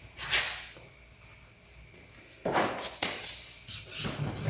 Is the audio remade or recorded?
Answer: recorded